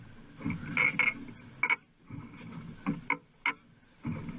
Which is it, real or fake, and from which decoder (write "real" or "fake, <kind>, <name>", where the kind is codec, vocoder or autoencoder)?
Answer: real